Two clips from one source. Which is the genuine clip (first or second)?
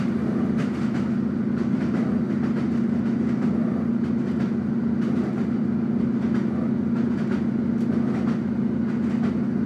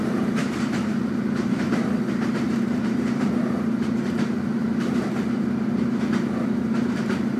first